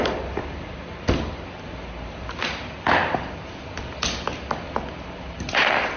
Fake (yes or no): yes